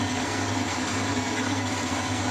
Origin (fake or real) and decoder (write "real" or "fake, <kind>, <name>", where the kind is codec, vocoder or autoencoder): fake, codec, SNAC